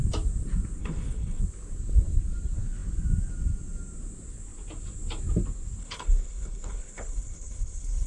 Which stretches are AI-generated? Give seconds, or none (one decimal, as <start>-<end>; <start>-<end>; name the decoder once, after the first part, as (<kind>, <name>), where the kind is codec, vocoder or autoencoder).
0.8-1.4 (codec, HILCodec); 5.8-8.1